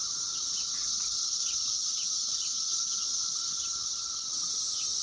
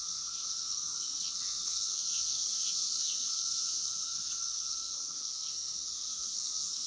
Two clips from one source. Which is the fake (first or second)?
second